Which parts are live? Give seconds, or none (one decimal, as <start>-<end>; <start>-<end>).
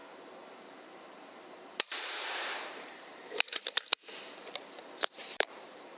3.6-5.2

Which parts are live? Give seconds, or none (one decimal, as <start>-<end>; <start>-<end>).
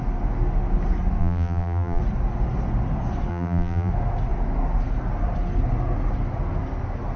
0.0-1.2; 2.0-3.3; 3.9-7.2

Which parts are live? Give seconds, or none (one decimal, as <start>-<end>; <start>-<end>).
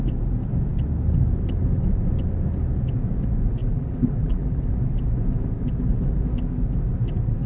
0.0-3.6; 4.6-7.5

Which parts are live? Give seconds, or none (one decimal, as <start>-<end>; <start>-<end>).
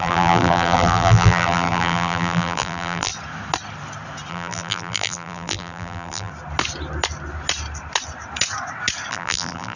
3.1-4.3; 6.3-9.1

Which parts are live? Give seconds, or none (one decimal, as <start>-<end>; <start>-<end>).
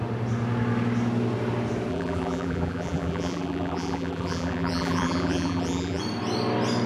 0.0-1.9; 6.0-6.9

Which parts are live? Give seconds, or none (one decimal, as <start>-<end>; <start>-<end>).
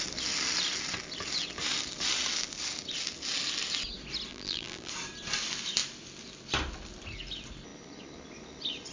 0.0-4.3; 4.9-8.9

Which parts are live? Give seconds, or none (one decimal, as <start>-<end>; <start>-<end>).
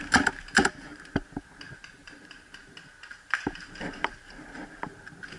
0.0-0.9; 1.4-2.0; 4.5-5.4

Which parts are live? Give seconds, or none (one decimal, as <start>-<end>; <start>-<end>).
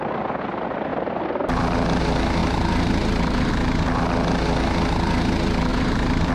0.0-2.4; 3.5-5.7